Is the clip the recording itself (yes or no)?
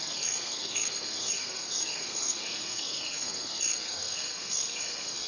no